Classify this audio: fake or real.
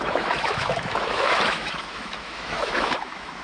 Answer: fake